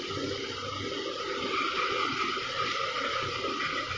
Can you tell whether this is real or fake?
real